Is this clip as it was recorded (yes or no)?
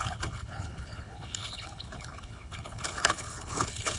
no